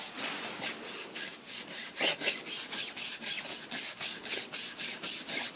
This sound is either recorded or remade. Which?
recorded